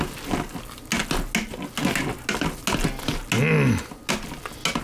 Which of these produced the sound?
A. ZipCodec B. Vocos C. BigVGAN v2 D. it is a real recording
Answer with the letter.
D